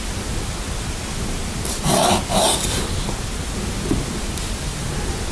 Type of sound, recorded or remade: recorded